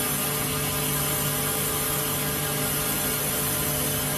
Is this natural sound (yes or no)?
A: yes